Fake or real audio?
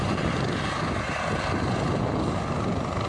real